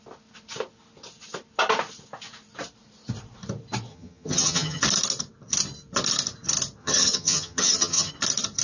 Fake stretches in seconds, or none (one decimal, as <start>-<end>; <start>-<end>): 3.9-4.8; 6.8-8.1